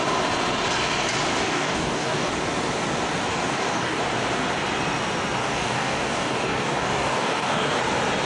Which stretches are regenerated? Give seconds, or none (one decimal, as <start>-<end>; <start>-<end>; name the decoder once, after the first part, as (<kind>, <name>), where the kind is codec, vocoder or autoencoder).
1.3-2.3 (codec, DAC); 3.3-4.0; 5.4-7.8